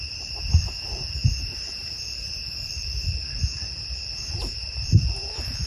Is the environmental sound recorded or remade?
remade